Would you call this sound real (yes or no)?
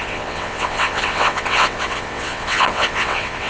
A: no